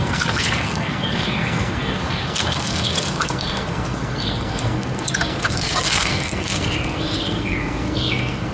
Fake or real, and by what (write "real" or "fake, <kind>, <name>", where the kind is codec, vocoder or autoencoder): fake, codec, SNAC